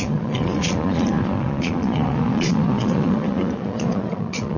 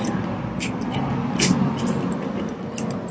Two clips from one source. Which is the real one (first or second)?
second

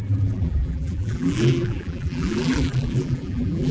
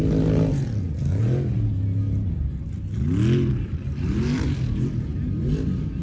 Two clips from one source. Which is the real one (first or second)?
second